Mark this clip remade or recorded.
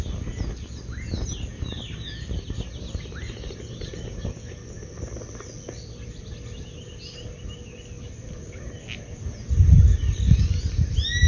recorded